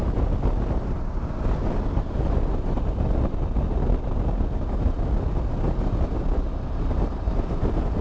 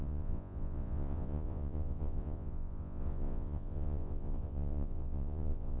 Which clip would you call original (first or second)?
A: first